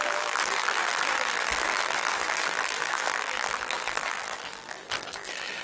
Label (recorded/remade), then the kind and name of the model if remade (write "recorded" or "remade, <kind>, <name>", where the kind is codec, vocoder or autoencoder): remade, vocoder, BigVGAN v2